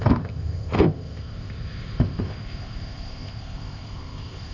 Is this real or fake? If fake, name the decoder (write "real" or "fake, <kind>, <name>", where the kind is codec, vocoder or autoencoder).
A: fake, codec, ZipCodec